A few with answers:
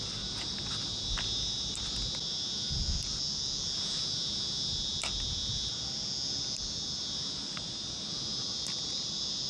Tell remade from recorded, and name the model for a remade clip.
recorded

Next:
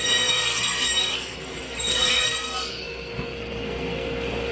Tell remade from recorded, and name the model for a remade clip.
remade, codec, SNAC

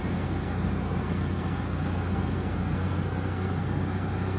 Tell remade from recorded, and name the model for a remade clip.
remade, codec, SNAC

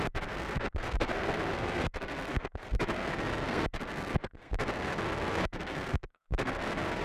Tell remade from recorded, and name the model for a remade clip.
remade, codec, SNAC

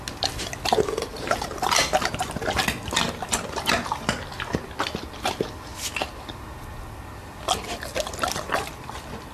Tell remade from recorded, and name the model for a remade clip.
recorded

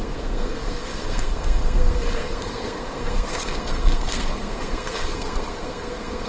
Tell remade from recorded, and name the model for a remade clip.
remade, codec, SNAC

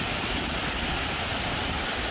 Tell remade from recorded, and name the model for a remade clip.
recorded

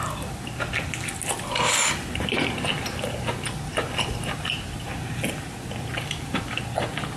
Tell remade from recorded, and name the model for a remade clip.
recorded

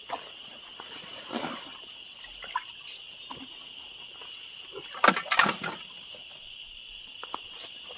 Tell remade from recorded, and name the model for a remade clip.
recorded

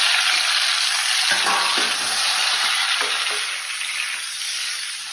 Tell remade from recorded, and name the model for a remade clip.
recorded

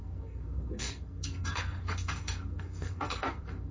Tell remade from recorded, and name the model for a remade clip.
remade, codec, SNAC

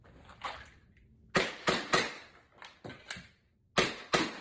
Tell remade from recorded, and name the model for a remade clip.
recorded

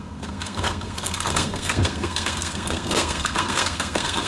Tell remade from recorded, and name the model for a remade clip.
remade, codec, SNAC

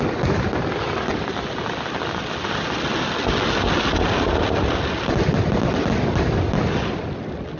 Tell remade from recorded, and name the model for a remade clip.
recorded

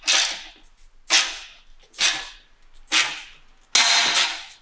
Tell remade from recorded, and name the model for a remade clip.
recorded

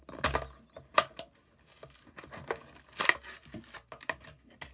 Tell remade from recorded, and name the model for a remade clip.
recorded